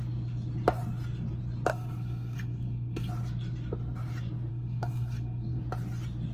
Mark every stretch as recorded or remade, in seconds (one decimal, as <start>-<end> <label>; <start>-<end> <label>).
0.0-1.7 recorded; 1.7-3.1 remade; 3.1-4.5 recorded; 4.5-5.6 remade; 5.6-6.3 recorded